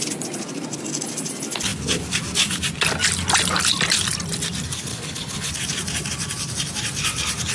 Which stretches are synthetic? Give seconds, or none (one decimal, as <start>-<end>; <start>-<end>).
4.9-5.5